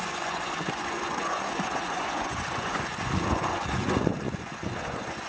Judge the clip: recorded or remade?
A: remade